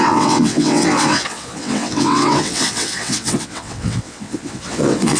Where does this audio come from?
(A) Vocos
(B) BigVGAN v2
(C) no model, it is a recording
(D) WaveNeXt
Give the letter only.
D